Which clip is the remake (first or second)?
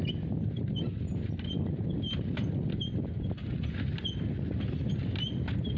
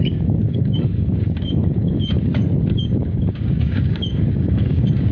second